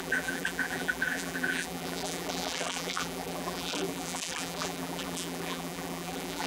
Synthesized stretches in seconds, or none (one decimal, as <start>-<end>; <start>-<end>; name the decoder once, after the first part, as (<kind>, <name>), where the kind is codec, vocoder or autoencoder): 0.0-6.5 (vocoder, BigVGAN v2)